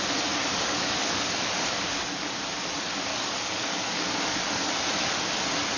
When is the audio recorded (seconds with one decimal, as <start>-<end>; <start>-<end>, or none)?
0.0-0.4; 2.3-3.1; 4.6-5.8